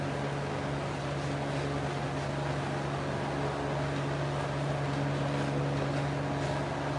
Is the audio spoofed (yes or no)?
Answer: no